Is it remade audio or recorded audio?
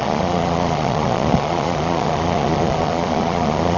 remade